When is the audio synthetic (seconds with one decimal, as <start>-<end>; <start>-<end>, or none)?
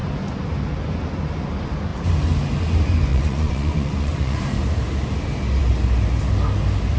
3.1-4.4